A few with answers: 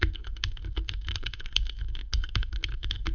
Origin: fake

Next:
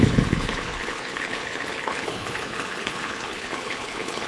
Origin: fake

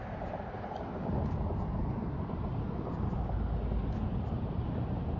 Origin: real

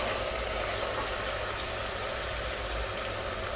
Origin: real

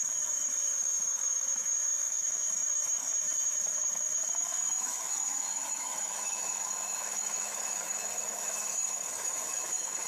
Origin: fake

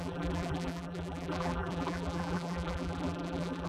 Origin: fake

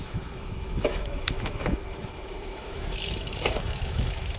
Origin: fake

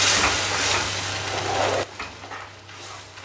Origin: real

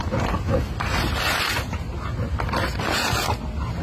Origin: real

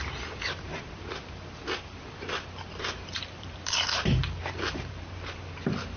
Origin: fake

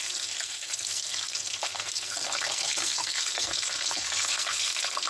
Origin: fake